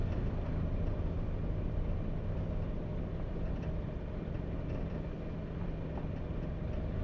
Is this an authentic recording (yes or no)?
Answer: yes